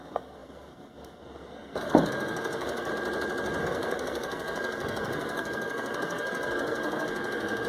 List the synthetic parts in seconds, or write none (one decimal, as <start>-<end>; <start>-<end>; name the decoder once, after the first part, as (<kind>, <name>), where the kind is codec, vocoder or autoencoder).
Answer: 0.0-2.9 (codec, SNAC); 3.6-7.7